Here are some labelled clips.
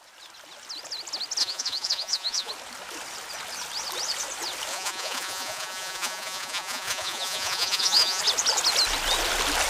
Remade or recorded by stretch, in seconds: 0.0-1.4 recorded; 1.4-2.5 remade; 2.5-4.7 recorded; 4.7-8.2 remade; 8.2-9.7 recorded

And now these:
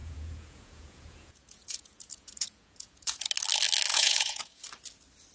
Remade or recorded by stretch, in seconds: 0.0-3.2 remade; 3.2-3.9 recorded; 3.9-4.6 remade; 4.6-5.3 recorded

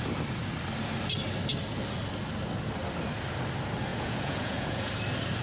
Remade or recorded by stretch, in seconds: 0.0-3.9 recorded; 3.9-4.9 remade; 4.9-5.4 recorded

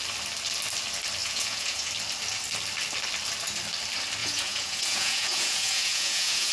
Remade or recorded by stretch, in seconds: 0.0-1.2 recorded; 1.2-1.9 remade; 1.9-4.2 recorded; 4.2-6.5 remade